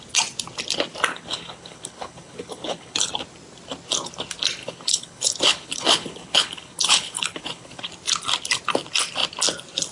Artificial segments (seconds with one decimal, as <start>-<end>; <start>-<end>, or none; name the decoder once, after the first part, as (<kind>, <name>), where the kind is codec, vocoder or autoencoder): 1.1-3.1 (codec, HILCodec); 4.6-7.8